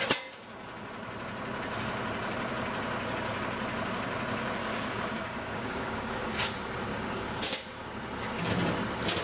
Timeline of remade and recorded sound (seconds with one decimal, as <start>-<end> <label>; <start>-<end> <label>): 0.0-4.6 recorded; 4.6-6.3 remade; 6.3-6.9 recorded; 6.9-7.6 remade; 7.6-9.2 recorded